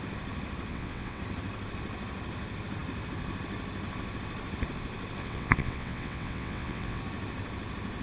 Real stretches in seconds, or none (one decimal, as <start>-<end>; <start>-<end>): 0.0-0.7; 1.2-5.2; 7.0-8.0